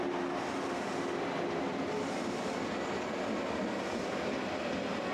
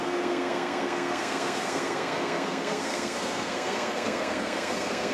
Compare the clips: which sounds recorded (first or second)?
first